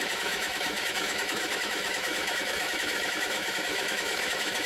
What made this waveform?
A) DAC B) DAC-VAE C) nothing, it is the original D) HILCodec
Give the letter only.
B